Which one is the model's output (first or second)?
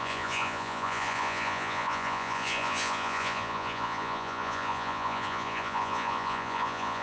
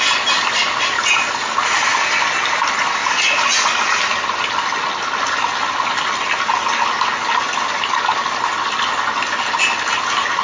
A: first